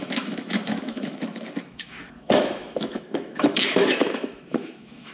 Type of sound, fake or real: fake